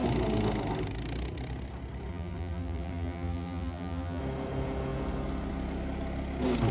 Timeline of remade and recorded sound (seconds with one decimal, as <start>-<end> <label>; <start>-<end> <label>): 0.0-2.1 recorded; 2.1-4.2 remade; 4.2-6.7 recorded

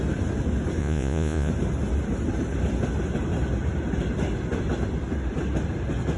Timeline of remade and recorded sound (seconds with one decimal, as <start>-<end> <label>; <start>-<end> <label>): 0.0-0.8 recorded; 0.8-1.5 remade; 1.5-6.2 recorded

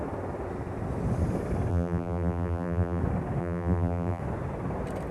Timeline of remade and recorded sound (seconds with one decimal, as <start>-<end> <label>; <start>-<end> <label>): 0.0-1.7 recorded; 1.7-3.0 remade; 3.0-3.4 recorded; 3.4-4.2 remade; 4.2-5.1 recorded

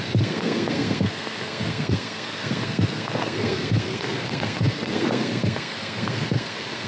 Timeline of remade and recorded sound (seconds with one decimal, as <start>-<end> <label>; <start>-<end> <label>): 0.0-6.9 remade

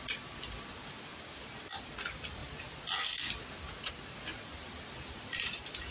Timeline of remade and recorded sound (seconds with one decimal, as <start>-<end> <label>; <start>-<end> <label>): 0.0-5.9 recorded

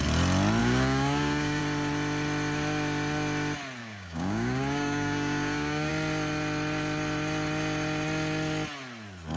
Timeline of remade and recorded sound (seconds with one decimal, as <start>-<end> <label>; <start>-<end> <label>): 0.0-0.6 recorded; 0.6-1.6 remade; 1.6-3.8 recorded; 3.8-5.9 remade; 5.9-9.4 recorded

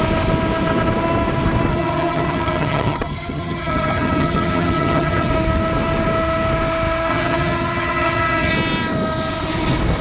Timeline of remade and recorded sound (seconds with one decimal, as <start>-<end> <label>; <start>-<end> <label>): 0.0-1.7 recorded; 1.7-5.3 remade; 5.3-7.1 recorded; 7.1-8.5 remade; 8.5-10.0 recorded